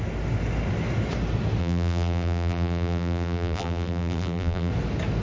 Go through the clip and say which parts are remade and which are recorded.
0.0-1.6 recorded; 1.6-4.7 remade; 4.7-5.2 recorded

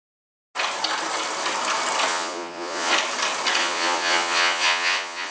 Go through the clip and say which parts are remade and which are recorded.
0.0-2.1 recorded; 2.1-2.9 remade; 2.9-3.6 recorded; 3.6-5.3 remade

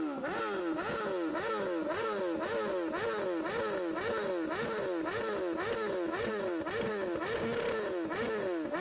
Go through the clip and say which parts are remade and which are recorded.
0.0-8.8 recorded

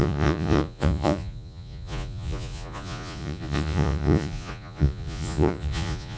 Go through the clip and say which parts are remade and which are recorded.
0.0-6.2 remade

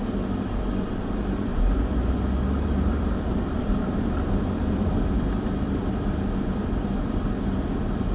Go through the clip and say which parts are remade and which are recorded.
0.0-1.5 recorded; 1.5-2.1 remade; 2.1-3.6 recorded; 3.6-5.6 remade; 5.6-8.1 recorded

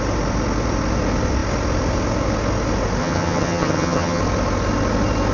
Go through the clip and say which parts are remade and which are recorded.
0.0-3.0 recorded; 3.0-4.2 remade; 4.2-5.3 recorded

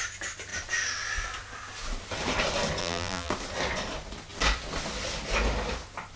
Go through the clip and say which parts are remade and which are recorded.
0.0-2.8 recorded; 2.8-3.3 remade; 3.3-6.2 recorded